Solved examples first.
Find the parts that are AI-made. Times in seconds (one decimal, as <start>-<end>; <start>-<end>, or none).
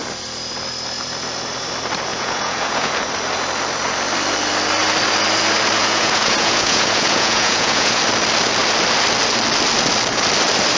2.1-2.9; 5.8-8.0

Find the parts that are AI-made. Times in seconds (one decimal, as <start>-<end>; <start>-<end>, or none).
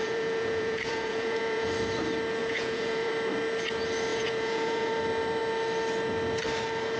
0.0-1.7; 2.4-3.1; 4.1-4.9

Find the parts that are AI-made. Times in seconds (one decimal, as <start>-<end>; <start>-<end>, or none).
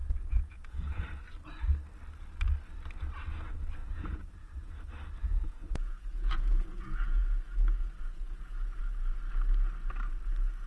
0.0-1.0; 3.8-4.7; 5.2-8.8